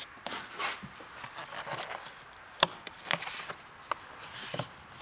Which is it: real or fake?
real